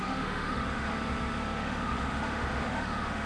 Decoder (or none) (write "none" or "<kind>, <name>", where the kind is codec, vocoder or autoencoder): autoencoder, DAC-VAE